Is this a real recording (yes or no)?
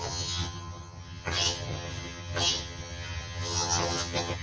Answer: no